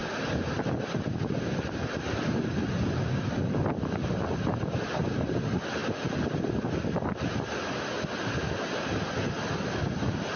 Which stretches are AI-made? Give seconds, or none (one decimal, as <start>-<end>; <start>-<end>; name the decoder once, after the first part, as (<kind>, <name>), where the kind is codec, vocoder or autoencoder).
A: none